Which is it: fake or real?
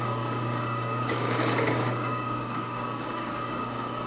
fake